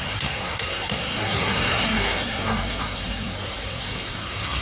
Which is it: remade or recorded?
remade